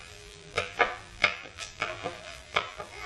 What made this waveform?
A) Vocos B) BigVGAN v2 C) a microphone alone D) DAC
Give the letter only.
B